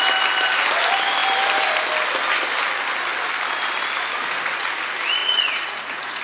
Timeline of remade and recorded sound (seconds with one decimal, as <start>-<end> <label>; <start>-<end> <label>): 0.0-5.2 recorded; 5.2-6.2 remade